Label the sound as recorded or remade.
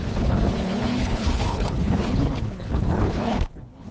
remade